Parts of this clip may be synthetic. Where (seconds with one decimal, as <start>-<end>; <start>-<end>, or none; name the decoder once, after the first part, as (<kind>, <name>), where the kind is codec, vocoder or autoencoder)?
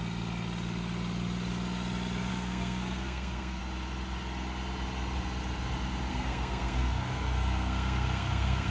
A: 2.3-3.6 (codec, SNAC); 6.1-8.7